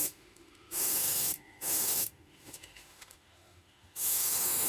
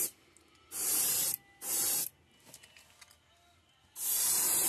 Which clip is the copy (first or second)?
first